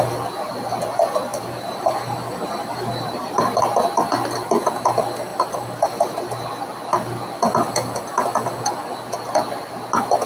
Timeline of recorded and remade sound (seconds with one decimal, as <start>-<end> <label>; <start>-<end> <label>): 0.0-1.3 recorded; 1.3-3.6 remade; 3.6-5.3 recorded; 5.3-6.2 remade; 6.2-10.3 recorded